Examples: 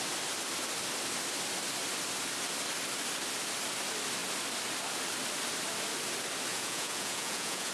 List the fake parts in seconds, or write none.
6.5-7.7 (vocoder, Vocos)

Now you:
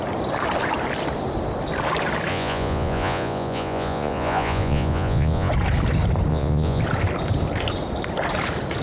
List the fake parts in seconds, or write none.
2.3-5.5 (vocoder, Vocos); 6.3-6.8

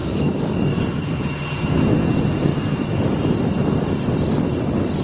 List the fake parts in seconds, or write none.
0.0-0.8 (codec, DAC)

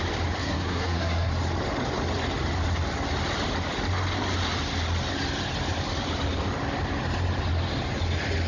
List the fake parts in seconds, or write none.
0.4-1.3 (codec, SNAC)